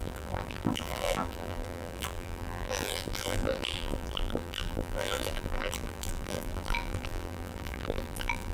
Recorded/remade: remade